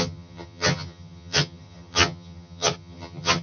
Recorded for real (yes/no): no